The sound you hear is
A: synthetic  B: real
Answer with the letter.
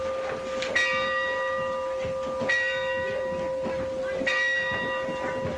B